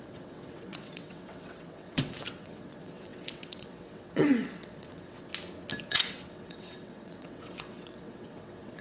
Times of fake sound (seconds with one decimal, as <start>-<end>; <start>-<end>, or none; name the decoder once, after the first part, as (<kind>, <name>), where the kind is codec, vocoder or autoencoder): 0.0-5.3 (vocoder, WaveNeXt); 5.8-8.8

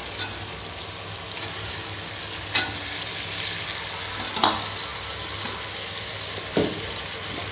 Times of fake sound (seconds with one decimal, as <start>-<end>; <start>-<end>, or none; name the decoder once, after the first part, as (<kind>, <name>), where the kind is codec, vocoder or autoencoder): none

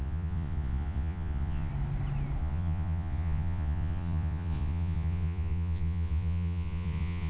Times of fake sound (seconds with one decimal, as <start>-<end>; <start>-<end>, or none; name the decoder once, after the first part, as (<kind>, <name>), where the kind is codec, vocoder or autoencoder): 0.0-1.7 (vocoder, Vocos); 2.4-7.3

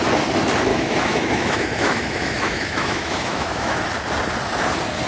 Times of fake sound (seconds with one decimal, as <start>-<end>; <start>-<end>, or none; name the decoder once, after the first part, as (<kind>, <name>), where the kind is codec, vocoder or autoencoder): 0.7-3.8 (autoencoder, DAC-VAE)

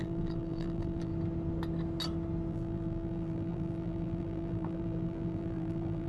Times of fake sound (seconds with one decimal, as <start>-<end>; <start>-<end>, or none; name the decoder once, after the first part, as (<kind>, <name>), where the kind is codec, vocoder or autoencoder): 0.0-1.1 (vocoder, BigVGAN v2); 2.5-6.1

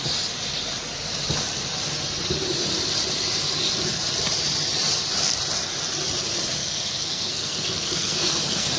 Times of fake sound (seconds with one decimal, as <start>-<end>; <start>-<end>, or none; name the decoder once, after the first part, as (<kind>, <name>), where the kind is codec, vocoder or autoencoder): 6.6-8.8 (codec, SNAC)